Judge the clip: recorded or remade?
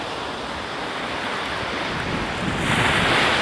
recorded